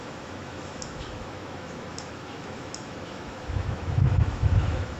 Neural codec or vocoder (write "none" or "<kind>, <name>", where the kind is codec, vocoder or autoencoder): autoencoder, DAC-VAE